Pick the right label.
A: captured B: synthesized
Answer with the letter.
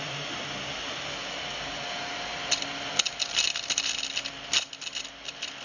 A